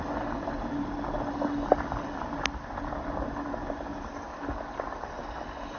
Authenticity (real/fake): real